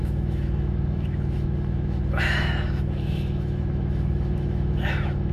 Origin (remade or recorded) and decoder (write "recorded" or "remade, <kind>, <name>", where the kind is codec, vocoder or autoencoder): remade, autoencoder, DAC-VAE